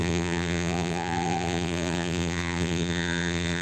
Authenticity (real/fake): fake